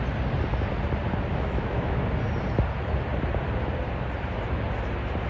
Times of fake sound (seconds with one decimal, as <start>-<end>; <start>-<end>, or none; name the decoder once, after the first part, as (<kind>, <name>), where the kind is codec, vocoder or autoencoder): 1.3-2.0 (autoencoder, DAC-VAE)